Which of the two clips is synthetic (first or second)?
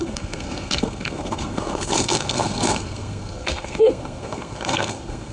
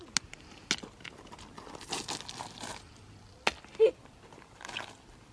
first